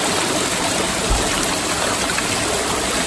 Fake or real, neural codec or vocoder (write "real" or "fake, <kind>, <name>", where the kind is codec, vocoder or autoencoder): real